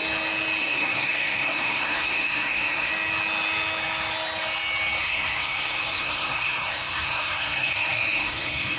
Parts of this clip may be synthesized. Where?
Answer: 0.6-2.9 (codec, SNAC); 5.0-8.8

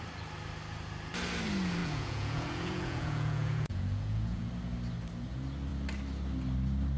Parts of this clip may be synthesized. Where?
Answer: 1.8-4.5 (vocoder, Vocos)

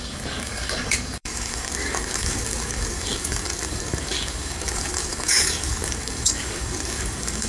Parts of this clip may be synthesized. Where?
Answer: 0.0-7.5 (codec, DAC)

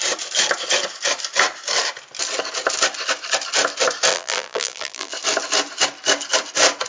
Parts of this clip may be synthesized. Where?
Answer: 4.1-5.1 (vocoder, BigVGAN v2)